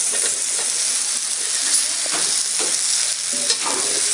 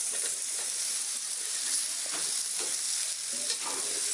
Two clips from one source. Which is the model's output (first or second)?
second